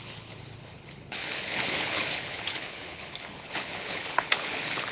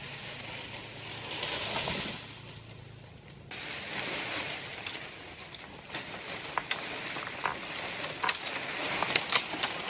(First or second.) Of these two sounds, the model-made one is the first